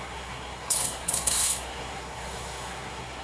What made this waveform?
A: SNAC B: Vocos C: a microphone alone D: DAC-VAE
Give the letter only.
A